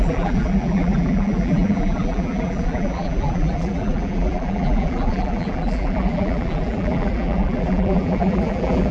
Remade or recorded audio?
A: remade